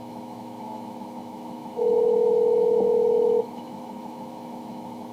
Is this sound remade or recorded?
remade